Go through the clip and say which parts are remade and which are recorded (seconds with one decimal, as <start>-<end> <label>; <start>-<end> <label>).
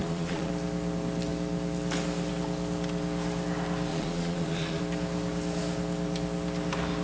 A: 0.0-0.5 remade; 0.5-3.9 recorded; 3.9-4.8 remade; 4.8-7.0 recorded